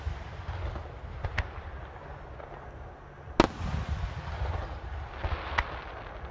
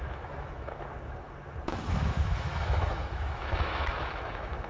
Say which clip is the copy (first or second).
second